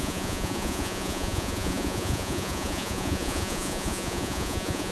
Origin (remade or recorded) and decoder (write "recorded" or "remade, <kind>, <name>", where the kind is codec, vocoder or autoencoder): remade, vocoder, Vocos